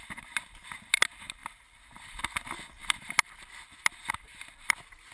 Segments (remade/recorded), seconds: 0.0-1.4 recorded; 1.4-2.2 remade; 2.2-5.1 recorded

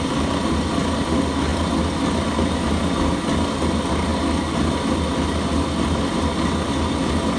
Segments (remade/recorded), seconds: 0.0-7.4 recorded

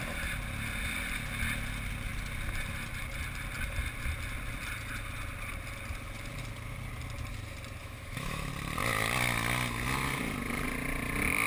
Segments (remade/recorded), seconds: 0.0-7.8 recorded; 7.8-8.5 remade; 8.5-11.5 recorded